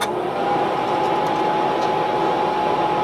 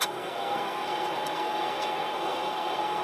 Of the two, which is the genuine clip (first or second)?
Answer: first